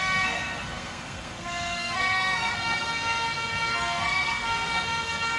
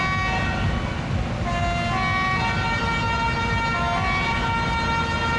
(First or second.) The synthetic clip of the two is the first